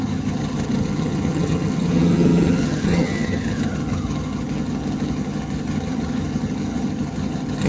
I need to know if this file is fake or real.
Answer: fake